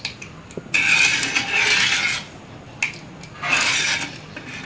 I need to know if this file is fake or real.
real